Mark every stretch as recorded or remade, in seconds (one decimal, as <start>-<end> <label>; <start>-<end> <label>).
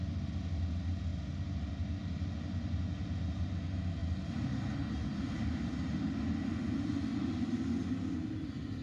0.0-1.1 recorded; 1.1-2.0 remade; 2.0-8.8 recorded